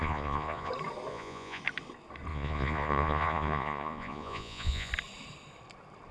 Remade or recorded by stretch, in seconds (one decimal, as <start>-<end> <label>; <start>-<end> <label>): 0.0-0.7 remade; 0.7-1.1 recorded; 1.1-1.6 remade; 1.6-2.3 recorded; 2.3-4.9 remade; 4.9-6.1 recorded